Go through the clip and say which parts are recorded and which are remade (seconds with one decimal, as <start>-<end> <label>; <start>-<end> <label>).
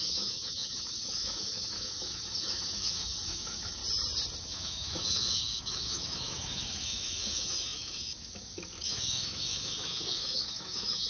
0.0-3.8 remade; 3.8-4.4 recorded; 4.4-11.1 remade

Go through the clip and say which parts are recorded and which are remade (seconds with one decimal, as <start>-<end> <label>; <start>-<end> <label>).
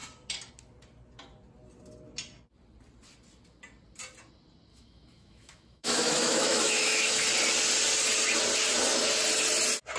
0.0-4.7 recorded; 4.7-7.1 remade; 7.1-10.0 recorded